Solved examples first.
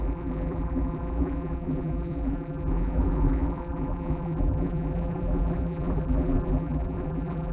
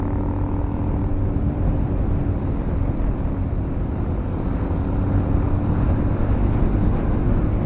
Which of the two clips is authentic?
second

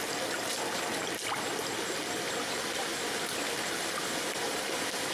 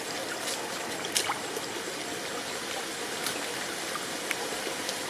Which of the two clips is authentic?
first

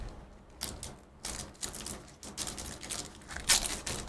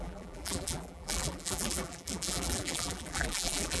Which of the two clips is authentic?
first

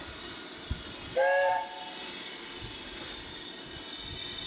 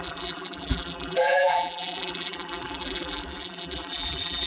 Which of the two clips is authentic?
first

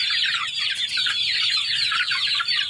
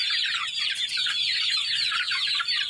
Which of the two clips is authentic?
second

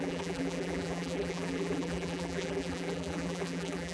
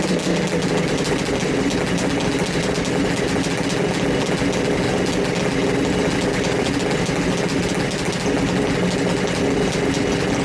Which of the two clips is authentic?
second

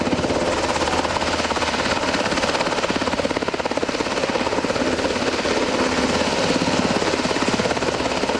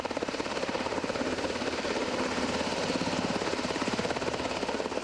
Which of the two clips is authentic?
first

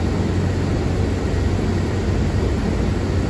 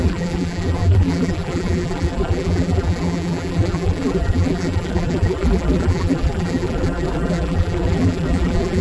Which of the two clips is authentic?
first